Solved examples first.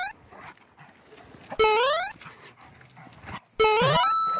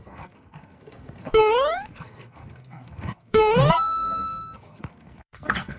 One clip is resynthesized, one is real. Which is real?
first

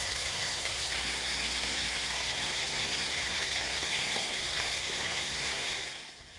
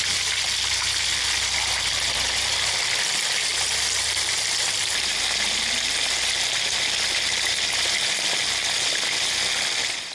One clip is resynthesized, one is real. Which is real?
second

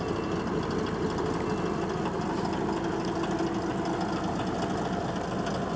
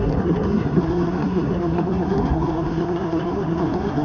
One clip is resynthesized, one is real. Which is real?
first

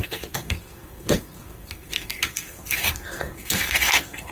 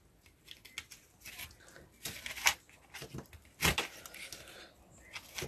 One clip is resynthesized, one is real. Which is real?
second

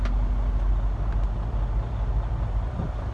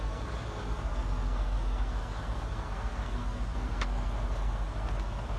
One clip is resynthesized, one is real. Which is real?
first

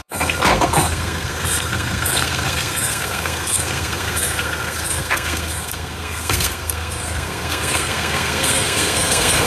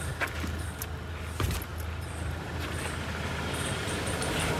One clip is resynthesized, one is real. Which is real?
second